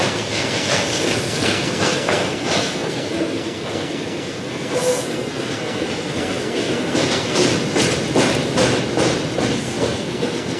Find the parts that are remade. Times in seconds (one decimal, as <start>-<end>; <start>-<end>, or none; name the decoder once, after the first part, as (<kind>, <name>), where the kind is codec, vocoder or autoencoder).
0.0-7.4 (codec, SNAC); 9.6-10.6